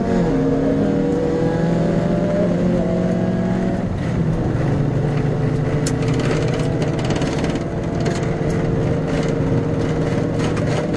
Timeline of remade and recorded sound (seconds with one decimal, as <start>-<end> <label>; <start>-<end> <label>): 0.0-1.1 recorded; 1.1-2.5 remade; 2.5-3.7 recorded; 3.7-4.3 remade; 4.3-11.0 recorded